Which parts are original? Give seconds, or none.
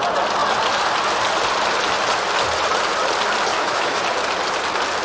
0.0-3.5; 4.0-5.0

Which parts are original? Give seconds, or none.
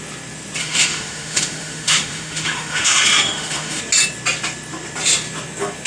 0.0-0.6; 3.8-5.9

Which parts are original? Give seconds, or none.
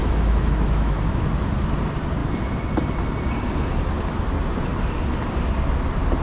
1.4-6.2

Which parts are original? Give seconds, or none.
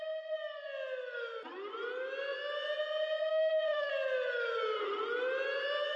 0.0-3.3; 3.9-6.0